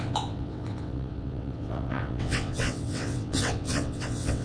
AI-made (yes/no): yes